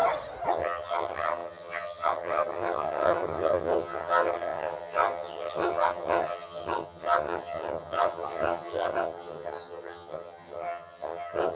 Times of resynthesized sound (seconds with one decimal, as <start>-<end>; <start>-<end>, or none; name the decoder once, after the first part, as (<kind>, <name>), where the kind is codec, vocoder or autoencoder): 0.5-11.6 (vocoder, HiFi-GAN)